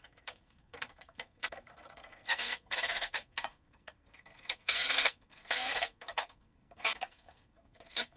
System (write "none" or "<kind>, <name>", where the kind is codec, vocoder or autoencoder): codec, SNAC